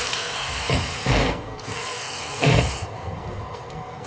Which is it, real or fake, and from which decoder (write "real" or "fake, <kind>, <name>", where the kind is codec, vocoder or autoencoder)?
fake, codec, SNAC